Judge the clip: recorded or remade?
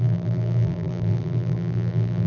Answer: remade